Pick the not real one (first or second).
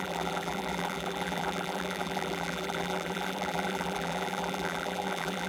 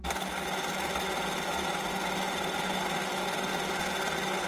first